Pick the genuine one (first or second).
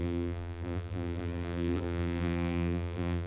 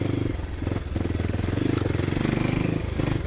second